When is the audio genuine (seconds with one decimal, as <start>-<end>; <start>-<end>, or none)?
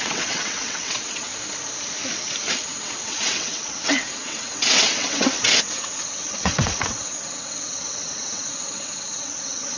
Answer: 1.3-2.5